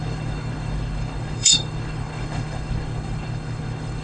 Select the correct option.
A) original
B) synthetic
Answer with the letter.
B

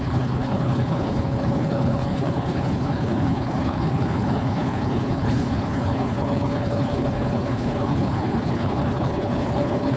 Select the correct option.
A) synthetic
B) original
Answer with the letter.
A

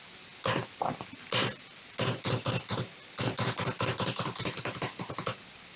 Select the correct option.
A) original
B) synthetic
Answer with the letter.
A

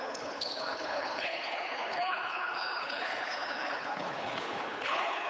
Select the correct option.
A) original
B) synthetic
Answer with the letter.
B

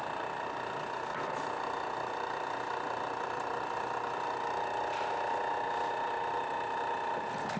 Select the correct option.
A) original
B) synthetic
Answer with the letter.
A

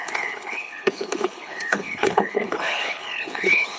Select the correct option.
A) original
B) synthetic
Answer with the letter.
B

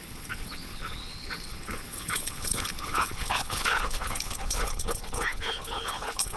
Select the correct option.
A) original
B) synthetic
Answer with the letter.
B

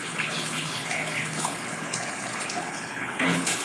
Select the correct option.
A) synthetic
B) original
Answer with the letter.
A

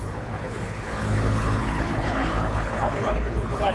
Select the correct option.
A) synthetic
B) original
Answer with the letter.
A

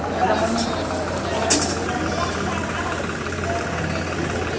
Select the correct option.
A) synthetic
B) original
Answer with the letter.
B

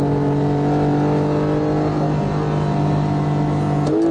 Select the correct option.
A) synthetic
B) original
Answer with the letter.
B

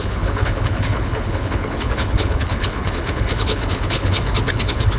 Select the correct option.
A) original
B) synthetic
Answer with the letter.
B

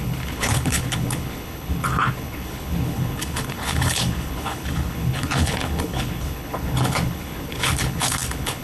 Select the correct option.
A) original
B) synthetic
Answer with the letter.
B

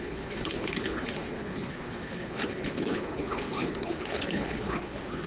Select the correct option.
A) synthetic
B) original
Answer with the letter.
A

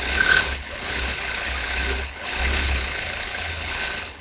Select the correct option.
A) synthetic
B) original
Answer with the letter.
A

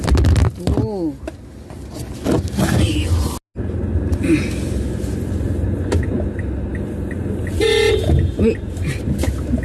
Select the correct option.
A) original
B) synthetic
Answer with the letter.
A